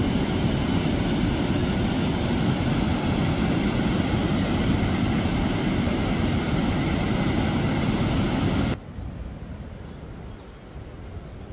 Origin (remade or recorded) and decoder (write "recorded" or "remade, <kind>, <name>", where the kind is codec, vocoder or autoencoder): recorded